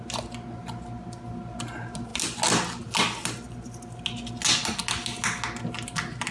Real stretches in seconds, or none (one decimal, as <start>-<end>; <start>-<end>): 0.0-6.3